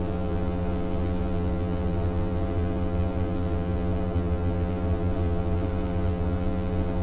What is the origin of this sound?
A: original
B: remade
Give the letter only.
B